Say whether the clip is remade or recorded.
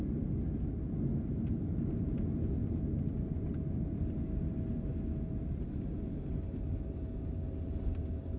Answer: recorded